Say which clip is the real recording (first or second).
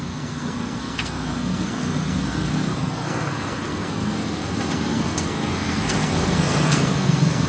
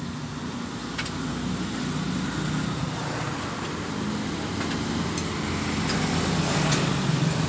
second